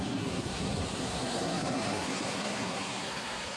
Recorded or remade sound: remade